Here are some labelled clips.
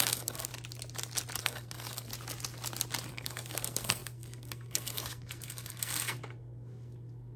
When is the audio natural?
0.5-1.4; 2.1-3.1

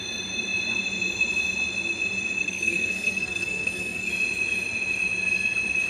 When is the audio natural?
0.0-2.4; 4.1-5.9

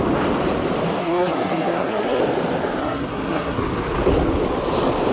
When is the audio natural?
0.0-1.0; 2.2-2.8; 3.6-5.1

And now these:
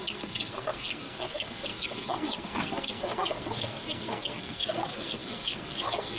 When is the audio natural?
none

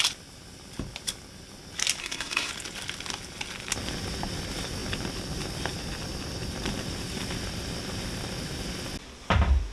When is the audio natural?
0.0-2.0; 2.5-9.7

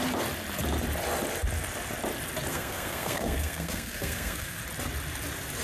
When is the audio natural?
0.0-2.5; 4.6-5.6

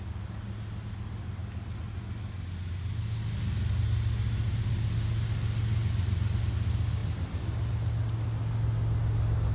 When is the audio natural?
0.0-9.5